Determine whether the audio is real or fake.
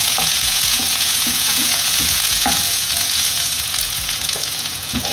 fake